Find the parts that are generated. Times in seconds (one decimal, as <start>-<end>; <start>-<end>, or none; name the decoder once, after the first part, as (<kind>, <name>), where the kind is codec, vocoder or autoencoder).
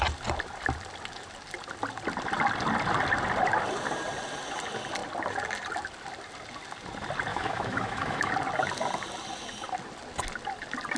7.3-8.3 (autoencoder, DAC-VAE)